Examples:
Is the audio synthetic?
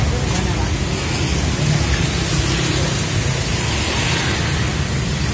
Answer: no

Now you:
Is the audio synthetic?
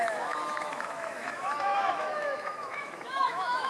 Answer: yes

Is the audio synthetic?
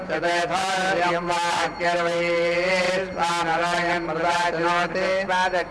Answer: yes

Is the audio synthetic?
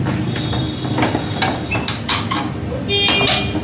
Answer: no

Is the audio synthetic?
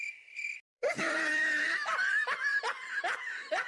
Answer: yes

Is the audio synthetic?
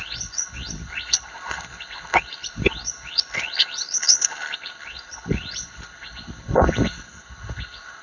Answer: yes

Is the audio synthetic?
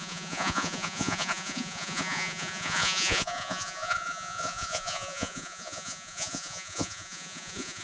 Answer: yes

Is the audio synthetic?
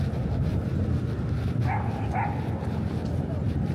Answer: no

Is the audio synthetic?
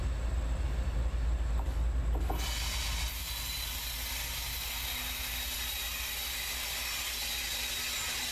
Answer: no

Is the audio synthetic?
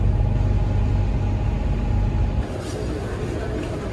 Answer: no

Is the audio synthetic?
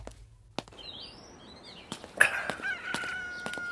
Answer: no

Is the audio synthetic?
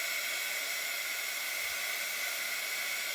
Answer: no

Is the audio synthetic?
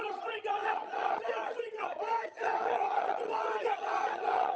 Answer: yes